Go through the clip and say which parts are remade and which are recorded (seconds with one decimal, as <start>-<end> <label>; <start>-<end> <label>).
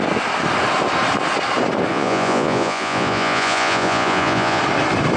0.0-1.9 recorded; 1.9-4.6 remade; 4.6-5.2 recorded